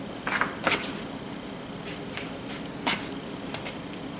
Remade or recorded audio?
recorded